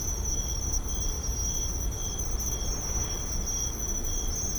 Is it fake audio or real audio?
real